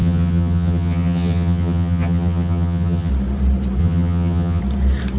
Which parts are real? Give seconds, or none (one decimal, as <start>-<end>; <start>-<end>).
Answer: 3.1-3.8; 4.6-5.2

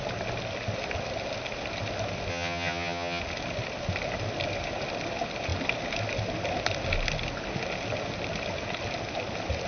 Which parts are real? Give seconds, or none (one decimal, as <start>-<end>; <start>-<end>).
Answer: 0.0-2.3; 3.2-9.7

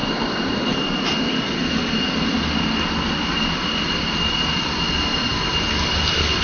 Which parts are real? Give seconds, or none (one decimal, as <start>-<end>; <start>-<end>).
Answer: 0.0-6.4